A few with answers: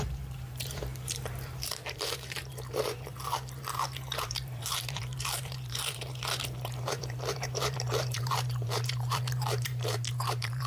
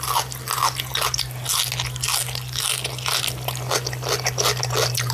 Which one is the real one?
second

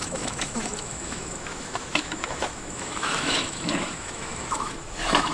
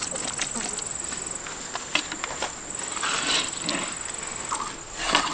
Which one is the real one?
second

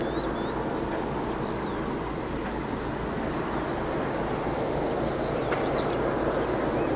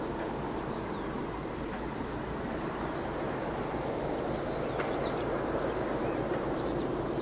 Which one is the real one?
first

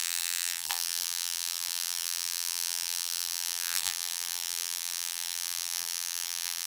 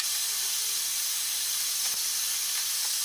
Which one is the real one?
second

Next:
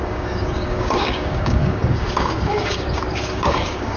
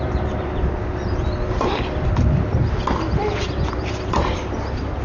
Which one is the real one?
second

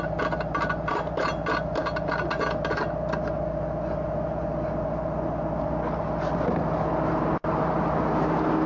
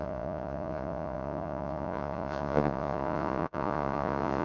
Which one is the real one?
first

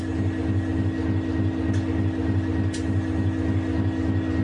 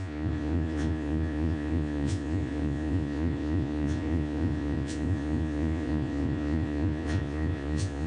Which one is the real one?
first